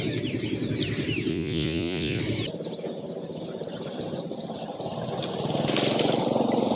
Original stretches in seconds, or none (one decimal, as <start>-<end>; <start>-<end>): 0.0-1.3; 2.2-6.8